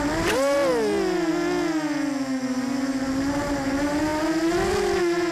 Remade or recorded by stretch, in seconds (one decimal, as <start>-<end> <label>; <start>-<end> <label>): 0.0-5.3 recorded